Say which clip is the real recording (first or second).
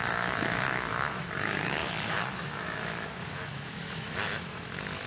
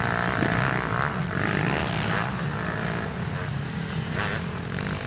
second